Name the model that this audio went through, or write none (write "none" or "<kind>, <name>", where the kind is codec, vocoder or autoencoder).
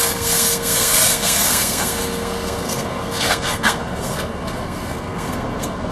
codec, SNAC